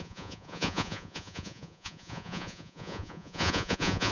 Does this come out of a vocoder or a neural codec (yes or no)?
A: yes